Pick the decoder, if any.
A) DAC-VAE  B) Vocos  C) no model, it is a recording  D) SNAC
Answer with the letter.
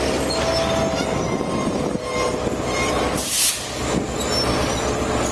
C